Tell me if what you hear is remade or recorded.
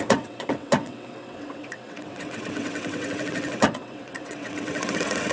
remade